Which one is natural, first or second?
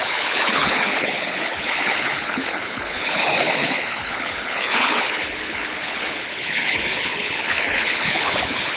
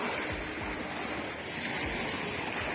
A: second